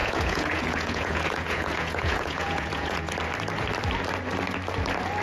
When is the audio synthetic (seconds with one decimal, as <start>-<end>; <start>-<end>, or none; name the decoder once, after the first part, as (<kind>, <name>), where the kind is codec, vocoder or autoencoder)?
0.0-3.1 (vocoder, Vocos)